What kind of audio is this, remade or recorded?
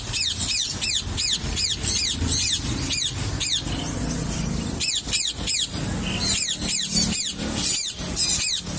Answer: recorded